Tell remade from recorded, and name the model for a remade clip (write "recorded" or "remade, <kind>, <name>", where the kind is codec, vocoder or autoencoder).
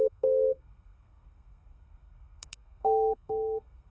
remade, codec, SNAC